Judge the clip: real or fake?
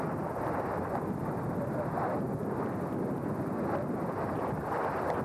real